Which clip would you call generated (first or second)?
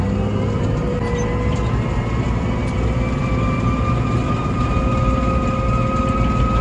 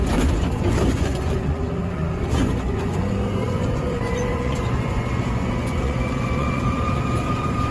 second